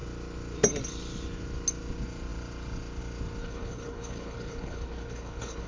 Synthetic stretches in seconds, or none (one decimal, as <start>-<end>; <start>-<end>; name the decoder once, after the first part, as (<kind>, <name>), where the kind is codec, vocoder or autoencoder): 3.4-5.7 (codec, HILCodec)